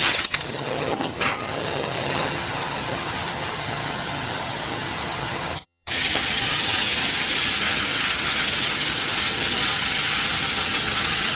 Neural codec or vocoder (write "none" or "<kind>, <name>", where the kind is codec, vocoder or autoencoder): vocoder, HiFi-GAN